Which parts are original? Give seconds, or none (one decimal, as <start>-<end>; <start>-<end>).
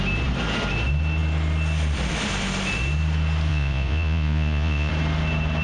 0.0-3.5; 4.9-5.6